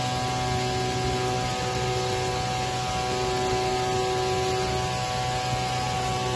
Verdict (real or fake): real